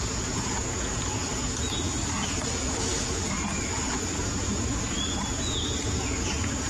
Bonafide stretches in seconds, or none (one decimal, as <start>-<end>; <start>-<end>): none